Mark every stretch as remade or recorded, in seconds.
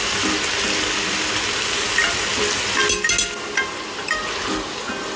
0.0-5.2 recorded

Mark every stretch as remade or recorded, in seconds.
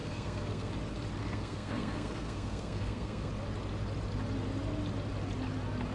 0.0-0.7 remade; 0.7-1.2 recorded; 1.2-3.3 remade; 3.3-5.9 recorded